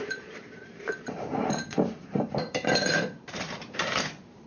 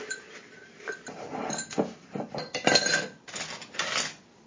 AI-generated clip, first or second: first